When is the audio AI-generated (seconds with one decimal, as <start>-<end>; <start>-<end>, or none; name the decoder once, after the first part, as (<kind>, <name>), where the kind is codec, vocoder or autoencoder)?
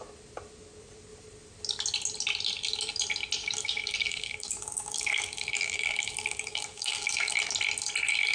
3.4-7.4 (codec, DAC)